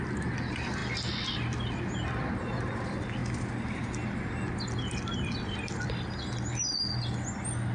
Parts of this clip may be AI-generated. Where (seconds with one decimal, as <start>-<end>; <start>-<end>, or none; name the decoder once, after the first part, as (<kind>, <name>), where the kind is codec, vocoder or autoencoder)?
none